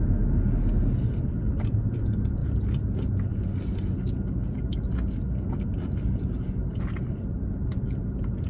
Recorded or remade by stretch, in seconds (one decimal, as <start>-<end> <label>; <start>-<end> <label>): 0.0-8.5 recorded